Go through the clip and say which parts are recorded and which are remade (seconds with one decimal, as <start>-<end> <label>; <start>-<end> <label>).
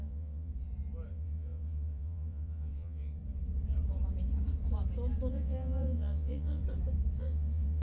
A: 0.0-0.5 remade; 0.5-1.1 recorded; 1.1-3.2 remade; 3.2-5.3 recorded; 5.3-6.6 remade; 6.6-7.2 recorded; 7.2-7.8 remade